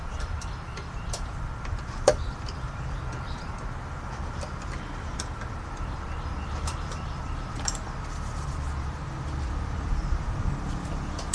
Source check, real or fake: fake